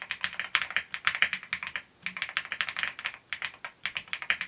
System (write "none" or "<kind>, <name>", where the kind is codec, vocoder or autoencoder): none